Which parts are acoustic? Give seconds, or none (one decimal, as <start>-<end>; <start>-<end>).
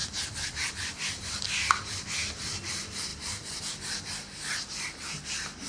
0.0-3.1; 3.6-5.7